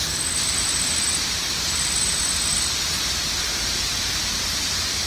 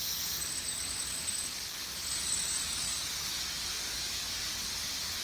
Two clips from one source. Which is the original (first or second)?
first